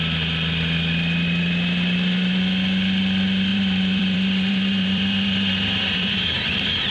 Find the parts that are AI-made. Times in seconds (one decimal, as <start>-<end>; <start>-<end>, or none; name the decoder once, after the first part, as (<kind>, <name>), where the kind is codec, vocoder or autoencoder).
3.5-6.9 (vocoder, BigVGAN v2)